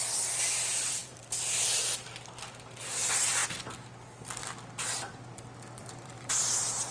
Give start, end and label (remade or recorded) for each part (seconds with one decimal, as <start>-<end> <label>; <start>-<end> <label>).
0.0-1.0 recorded; 1.0-2.1 remade; 2.1-5.8 recorded; 5.8-6.3 remade; 6.3-6.9 recorded

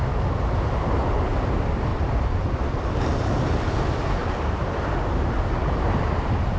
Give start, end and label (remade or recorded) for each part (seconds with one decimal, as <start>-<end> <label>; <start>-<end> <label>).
0.0-1.9 recorded; 1.9-2.4 remade; 2.4-4.2 recorded; 4.2-6.0 remade; 6.0-6.6 recorded

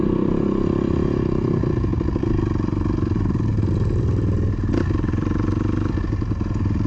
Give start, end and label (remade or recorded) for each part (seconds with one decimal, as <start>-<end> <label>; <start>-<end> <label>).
0.0-6.9 recorded

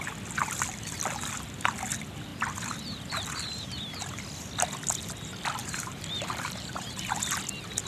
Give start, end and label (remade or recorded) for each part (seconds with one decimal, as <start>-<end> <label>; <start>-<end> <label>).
0.0-5.6 recorded; 5.6-7.1 remade; 7.1-7.9 recorded